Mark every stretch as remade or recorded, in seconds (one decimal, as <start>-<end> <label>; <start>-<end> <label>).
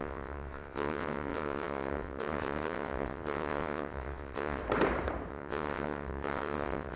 0.0-4.6 remade; 4.6-5.3 recorded; 5.3-7.0 remade